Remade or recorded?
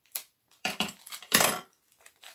remade